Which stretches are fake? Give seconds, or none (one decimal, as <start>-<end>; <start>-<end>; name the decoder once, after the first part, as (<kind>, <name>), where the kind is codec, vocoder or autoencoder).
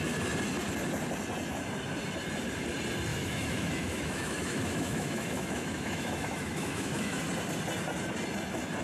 3.1-7.2 (autoencoder, DAC-VAE)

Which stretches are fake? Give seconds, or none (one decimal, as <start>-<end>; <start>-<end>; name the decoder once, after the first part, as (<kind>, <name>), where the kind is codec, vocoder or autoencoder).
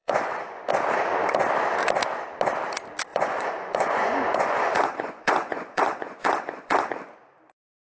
0.0-0.7 (vocoder, Vocos); 3.1-6.9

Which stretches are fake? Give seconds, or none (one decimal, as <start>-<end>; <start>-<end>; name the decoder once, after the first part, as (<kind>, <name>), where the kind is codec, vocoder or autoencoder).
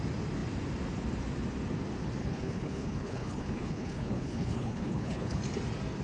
2.2-5.4 (codec, HILCodec)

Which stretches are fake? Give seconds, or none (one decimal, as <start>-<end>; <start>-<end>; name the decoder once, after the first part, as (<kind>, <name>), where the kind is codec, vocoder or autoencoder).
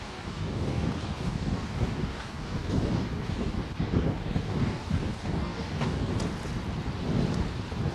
0.0-6.1 (codec, DAC)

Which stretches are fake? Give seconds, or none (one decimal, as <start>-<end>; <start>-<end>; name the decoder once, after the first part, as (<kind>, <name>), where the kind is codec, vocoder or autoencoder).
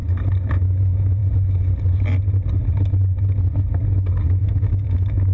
0.5-1.2 (autoencoder, DAC-VAE); 4.4-5.3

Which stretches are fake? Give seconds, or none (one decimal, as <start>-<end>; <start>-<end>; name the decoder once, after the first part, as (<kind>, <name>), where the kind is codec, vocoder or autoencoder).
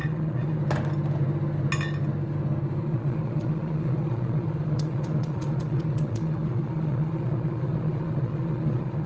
0.0-0.6 (vocoder, Vocos); 2.8-9.1